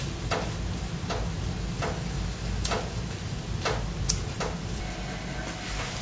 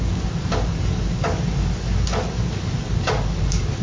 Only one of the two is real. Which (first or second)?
first